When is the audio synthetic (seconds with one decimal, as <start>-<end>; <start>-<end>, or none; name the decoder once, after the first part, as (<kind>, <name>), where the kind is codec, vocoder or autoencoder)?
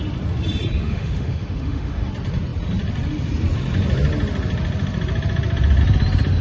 0.8-2.1 (autoencoder, DAC-VAE)